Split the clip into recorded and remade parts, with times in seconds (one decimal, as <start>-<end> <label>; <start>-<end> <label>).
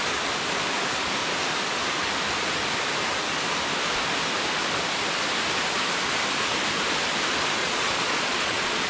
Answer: 0.0-7.6 recorded; 7.6-8.9 remade